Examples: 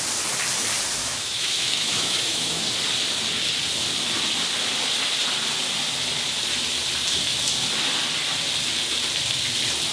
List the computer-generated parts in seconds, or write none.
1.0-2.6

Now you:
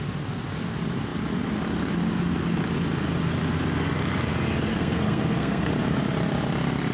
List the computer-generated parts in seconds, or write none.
4.7-5.7

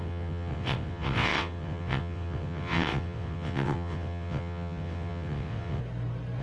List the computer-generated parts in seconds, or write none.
0.0-5.8